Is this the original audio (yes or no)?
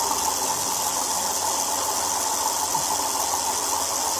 yes